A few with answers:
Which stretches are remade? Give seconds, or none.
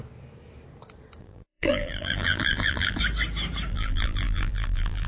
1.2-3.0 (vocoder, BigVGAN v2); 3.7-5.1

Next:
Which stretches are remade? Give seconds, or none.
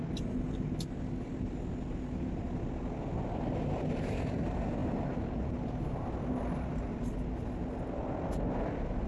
4.8-6.1 (vocoder, BigVGAN v2)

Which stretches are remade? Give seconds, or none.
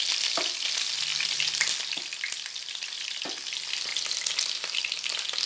1.1-1.8 (vocoder, BigVGAN v2); 2.6-3.1; 3.9-4.8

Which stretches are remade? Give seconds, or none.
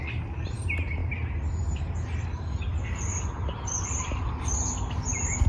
3.5-4.2 (vocoder, BigVGAN v2)